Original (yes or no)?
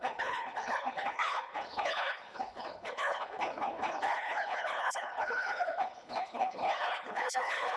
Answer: no